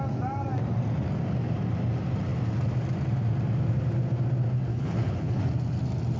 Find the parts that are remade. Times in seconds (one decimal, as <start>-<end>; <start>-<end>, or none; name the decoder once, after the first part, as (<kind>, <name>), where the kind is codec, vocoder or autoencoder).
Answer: 4.7-5.4 (codec, HILCodec)